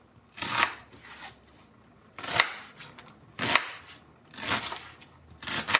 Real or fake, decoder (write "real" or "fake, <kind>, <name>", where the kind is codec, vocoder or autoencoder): real